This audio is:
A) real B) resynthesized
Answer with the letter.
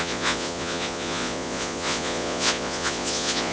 B